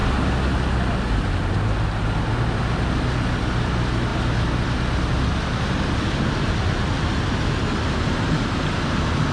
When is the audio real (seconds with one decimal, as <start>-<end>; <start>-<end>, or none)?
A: 0.0-9.3